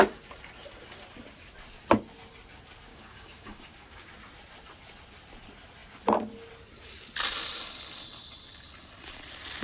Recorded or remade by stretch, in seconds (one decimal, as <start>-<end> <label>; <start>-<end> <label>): 0.0-2.9 recorded; 2.9-4.1 remade; 4.1-9.6 recorded